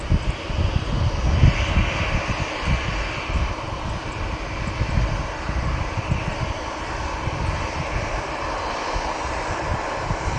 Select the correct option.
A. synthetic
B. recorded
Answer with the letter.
B